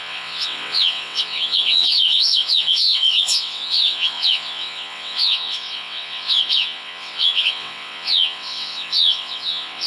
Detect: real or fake fake